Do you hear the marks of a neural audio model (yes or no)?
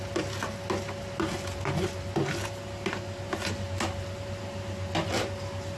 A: no